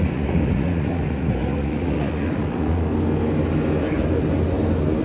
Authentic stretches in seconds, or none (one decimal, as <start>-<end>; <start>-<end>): 2.9-5.0